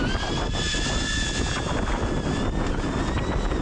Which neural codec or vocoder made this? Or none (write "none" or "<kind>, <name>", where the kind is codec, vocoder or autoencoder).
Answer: none